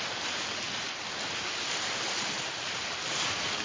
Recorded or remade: recorded